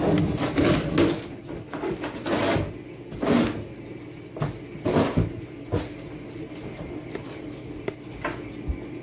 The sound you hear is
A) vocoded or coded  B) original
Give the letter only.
B